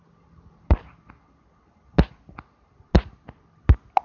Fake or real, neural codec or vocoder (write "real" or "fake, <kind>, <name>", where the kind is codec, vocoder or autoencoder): real